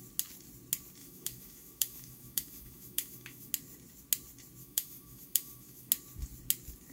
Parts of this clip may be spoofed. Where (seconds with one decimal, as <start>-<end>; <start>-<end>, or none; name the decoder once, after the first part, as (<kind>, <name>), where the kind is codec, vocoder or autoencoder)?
1.0-3.5 (autoencoder, DAC-VAE); 4.6-5.9